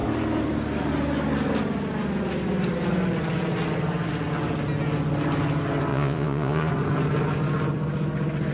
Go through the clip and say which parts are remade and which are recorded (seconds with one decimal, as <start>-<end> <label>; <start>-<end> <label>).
0.0-5.9 recorded; 5.9-6.7 remade; 6.7-8.5 recorded